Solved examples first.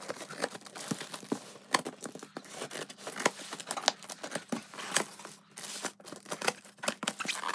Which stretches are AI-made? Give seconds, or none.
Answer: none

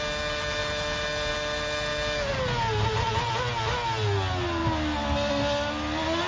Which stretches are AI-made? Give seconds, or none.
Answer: none

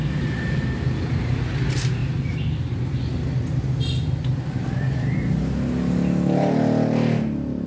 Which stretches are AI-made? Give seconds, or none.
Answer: none

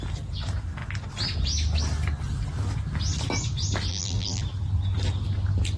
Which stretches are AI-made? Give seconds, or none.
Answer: 3.9-4.4

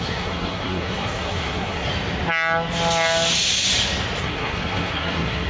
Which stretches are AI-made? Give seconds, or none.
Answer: 0.0-1.9; 4.2-5.5

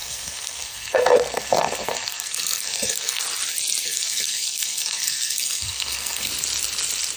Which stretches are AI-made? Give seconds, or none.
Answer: 0.0-3.2; 3.8-6.3